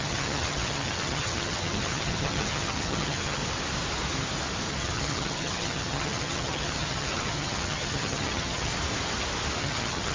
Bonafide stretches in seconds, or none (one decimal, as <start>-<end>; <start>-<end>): 3.4-4.7; 8.7-9.6